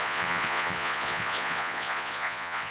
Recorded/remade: remade